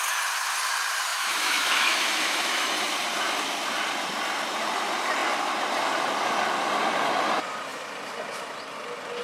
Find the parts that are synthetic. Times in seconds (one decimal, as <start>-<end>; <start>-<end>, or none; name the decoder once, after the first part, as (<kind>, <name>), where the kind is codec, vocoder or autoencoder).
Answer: 1.1-2.7 (autoencoder, DAC-VAE)